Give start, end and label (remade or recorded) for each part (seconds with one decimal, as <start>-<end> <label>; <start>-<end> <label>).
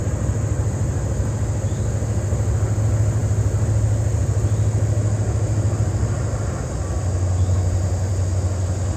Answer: 0.0-9.0 recorded